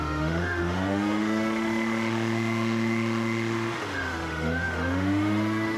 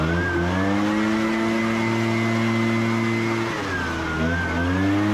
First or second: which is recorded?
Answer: second